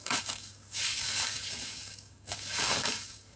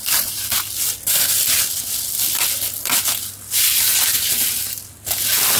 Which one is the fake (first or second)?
first